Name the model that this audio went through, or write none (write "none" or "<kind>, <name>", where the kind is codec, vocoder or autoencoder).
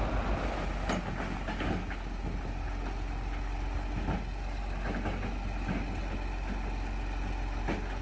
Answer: none